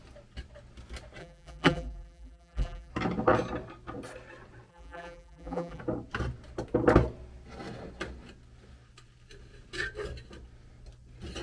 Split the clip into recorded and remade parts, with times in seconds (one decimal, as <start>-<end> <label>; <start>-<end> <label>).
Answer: 0.0-1.2 recorded; 1.2-2.9 remade; 2.9-4.7 recorded; 4.7-5.8 remade; 5.8-11.4 recorded